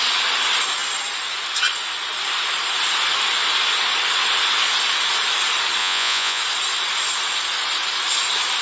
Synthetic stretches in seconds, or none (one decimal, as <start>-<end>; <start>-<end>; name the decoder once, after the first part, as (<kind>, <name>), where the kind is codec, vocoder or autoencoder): 5.8-6.4 (vocoder, Vocos)